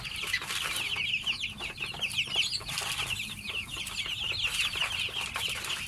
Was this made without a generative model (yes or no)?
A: no